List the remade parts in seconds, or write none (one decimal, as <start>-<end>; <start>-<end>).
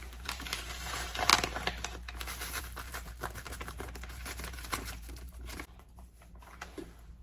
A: 0.0-1.3; 2.6-7.2